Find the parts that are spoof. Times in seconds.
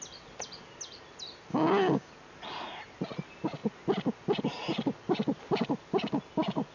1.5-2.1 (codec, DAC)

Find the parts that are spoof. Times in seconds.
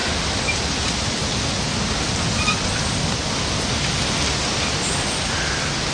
none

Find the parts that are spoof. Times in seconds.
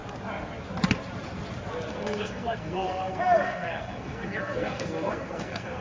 1.9-5.8 (codec, SNAC)